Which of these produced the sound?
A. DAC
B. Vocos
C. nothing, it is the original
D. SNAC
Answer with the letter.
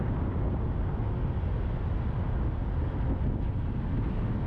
C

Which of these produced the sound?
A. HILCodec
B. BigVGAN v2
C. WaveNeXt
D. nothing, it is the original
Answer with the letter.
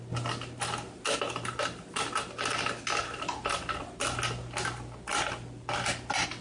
D